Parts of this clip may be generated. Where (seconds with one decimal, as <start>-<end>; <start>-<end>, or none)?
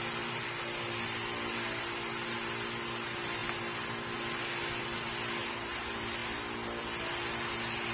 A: none